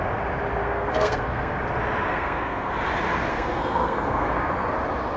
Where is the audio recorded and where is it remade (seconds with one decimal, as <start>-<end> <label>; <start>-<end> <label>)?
0.0-0.6 recorded; 0.6-1.6 remade; 1.6-2.1 recorded; 2.1-2.7 remade; 2.7-3.3 recorded; 3.3-4.5 remade; 4.5-5.2 recorded